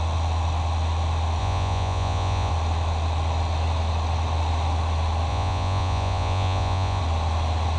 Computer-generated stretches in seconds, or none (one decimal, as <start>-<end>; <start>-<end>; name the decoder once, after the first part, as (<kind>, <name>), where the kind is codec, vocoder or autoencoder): 1.4-2.5 (vocoder, Vocos); 5.3-7.0